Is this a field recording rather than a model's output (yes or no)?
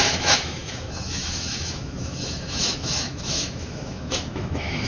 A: no